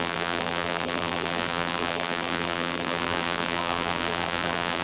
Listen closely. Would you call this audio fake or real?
fake